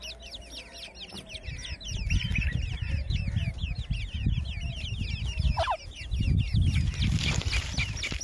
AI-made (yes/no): no